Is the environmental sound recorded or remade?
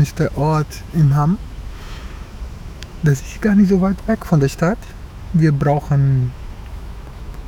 remade